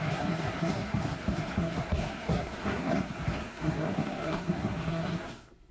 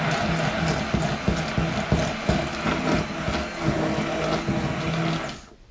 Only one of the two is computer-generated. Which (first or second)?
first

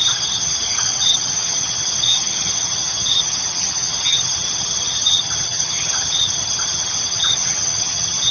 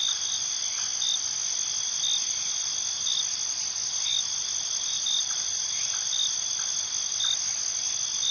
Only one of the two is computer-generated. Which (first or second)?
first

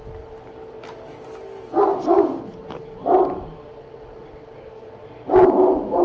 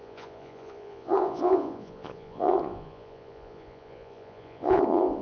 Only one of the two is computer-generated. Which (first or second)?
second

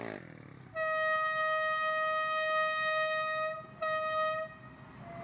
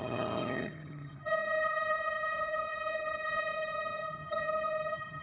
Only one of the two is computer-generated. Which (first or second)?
second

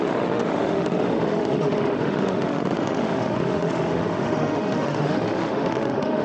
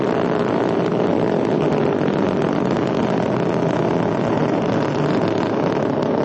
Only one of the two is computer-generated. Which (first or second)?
first